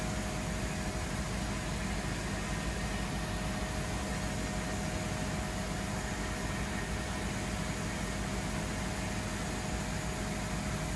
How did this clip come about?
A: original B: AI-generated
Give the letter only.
A